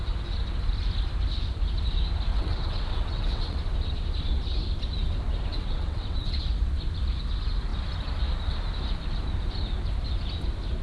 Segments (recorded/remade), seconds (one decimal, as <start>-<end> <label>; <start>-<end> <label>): 0.0-2.3 recorded; 2.3-3.6 remade; 3.6-5.5 recorded; 5.5-6.4 remade; 6.4-10.8 recorded